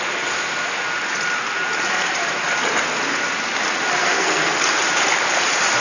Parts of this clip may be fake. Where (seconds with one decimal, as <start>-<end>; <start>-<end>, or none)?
4.0-4.6